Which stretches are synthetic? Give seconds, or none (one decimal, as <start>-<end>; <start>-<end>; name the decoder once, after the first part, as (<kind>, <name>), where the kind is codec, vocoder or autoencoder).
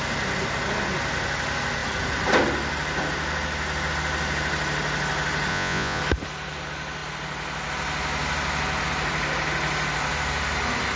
5.5-6.0 (vocoder, Vocos)